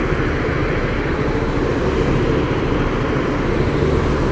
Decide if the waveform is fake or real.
real